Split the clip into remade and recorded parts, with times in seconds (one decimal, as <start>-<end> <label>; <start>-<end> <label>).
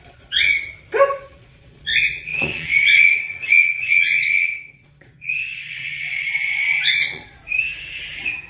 0.0-0.5 remade; 0.5-1.1 recorded; 1.1-7.4 remade; 7.4-8.5 recorded